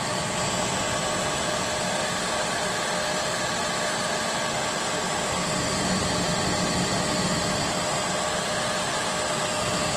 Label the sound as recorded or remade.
recorded